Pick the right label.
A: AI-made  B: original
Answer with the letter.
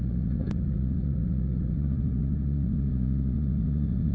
A